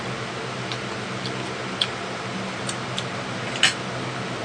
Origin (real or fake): real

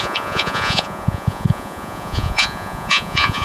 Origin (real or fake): fake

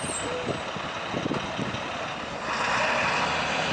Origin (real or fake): real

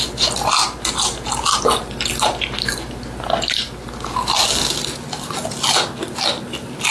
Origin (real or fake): real